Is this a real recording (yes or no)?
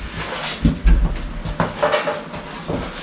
yes